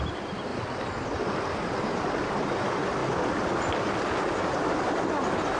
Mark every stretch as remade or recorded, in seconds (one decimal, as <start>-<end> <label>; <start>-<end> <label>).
0.0-5.6 recorded